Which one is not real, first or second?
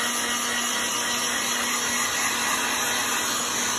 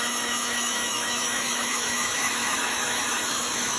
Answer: second